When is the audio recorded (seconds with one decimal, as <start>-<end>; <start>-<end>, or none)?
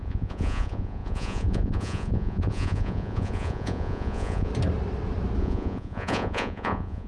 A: 4.5-5.4